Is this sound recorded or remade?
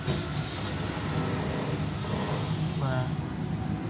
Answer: recorded